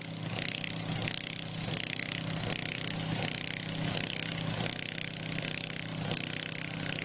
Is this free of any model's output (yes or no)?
yes